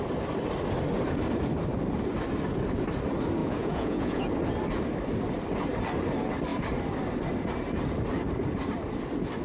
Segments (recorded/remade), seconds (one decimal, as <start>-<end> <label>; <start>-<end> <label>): 0.0-3.4 recorded; 3.4-4.2 remade; 4.2-9.4 recorded